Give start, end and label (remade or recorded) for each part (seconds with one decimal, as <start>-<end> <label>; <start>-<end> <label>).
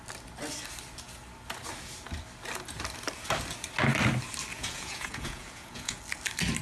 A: 0.0-4.5 recorded; 4.5-6.0 remade; 6.0-6.6 recorded